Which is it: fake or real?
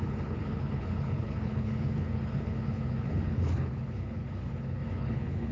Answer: fake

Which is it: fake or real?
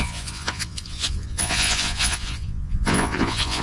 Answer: fake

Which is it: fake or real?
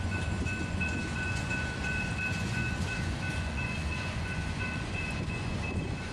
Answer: fake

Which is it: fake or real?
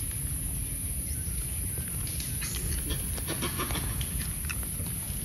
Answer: real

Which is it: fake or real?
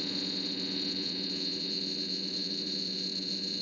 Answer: fake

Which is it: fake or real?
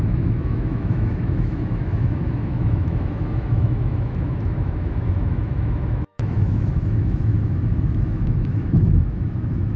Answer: fake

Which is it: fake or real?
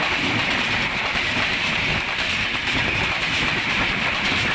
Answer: fake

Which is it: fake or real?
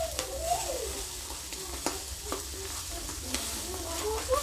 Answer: real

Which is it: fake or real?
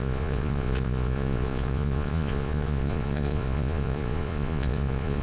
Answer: fake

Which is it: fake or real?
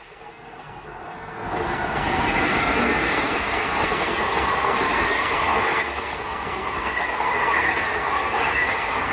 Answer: fake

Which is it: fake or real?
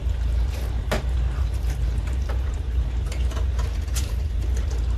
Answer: fake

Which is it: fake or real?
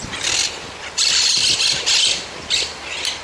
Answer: real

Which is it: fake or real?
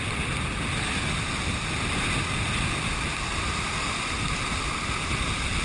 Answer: real